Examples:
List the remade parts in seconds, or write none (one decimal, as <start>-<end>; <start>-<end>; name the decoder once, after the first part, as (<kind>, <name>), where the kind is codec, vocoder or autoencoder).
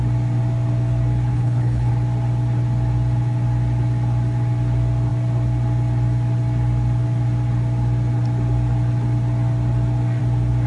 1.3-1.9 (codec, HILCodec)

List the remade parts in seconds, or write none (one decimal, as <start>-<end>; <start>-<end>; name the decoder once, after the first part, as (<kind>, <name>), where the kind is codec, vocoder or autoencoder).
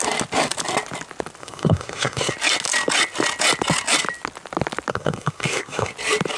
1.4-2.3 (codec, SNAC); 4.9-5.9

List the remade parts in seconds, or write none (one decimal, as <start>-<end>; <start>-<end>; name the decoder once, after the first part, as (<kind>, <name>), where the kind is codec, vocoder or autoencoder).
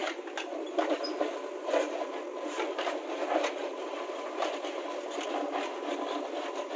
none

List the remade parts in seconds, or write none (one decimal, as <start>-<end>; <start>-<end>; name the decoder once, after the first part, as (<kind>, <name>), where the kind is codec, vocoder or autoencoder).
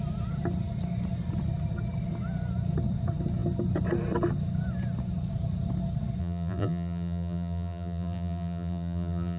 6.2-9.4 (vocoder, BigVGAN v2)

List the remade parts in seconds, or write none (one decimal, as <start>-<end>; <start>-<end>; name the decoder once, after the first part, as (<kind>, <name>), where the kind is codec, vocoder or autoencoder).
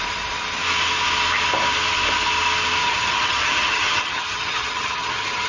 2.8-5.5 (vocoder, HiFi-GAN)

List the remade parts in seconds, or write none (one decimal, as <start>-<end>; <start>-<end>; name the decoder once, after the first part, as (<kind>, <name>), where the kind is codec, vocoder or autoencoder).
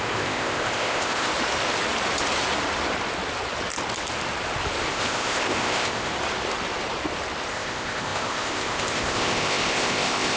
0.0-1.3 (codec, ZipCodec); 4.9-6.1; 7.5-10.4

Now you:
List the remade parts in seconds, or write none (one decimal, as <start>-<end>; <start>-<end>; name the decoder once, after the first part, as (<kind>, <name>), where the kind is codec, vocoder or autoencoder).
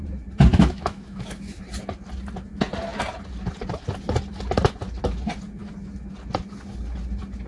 0.5-1.6 (autoencoder, DAC-VAE)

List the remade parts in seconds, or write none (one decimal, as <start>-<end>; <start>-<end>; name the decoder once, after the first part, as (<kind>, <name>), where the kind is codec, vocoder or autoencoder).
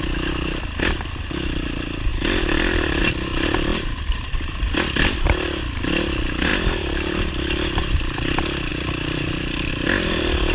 2.1-3.0 (vocoder, BigVGAN v2); 3.7-5.2; 6.5-7.3; 8.7-9.7